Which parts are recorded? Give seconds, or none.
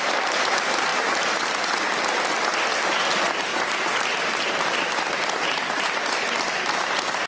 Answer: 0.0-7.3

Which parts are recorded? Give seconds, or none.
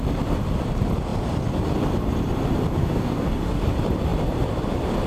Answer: 0.0-2.8; 3.6-5.1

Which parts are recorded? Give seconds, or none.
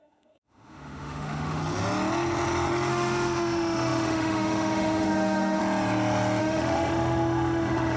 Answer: 1.6-2.9; 5.6-6.4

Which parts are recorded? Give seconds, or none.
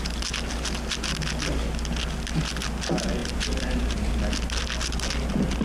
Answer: 0.0-3.2; 4.1-5.6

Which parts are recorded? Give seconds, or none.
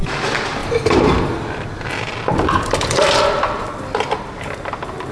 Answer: 0.0-0.6; 3.7-5.1